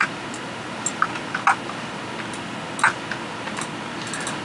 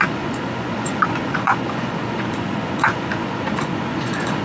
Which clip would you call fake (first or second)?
second